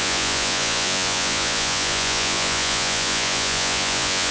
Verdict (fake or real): fake